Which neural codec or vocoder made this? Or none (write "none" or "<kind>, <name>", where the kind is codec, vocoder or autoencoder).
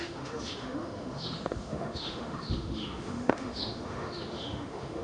autoencoder, DAC-VAE